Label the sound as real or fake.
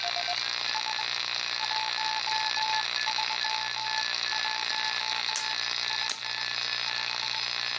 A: real